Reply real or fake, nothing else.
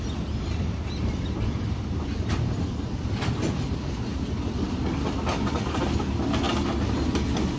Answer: real